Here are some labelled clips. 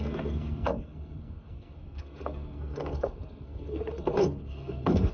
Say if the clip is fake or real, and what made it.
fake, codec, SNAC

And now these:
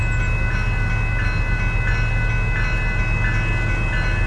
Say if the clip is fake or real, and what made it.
real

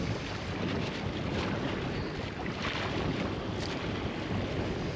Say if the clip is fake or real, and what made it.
real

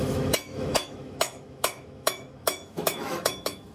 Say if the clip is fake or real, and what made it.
fake, autoencoder, DAC-VAE